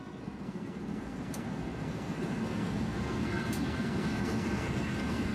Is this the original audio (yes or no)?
no